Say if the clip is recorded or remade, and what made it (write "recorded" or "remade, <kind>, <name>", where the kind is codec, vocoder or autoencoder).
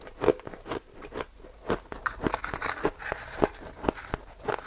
recorded